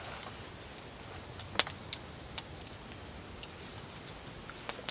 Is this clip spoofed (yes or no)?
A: no